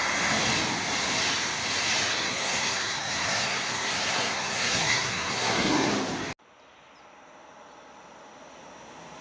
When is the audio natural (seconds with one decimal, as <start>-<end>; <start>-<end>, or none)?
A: 0.0-2.1; 5.9-9.2